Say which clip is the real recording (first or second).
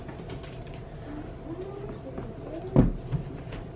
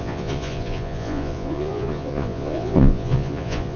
first